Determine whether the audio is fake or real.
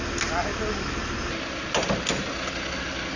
real